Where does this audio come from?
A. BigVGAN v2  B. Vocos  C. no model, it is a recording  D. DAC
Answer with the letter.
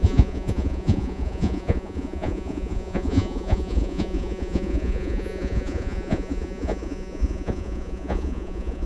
B